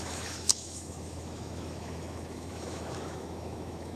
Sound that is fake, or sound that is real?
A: fake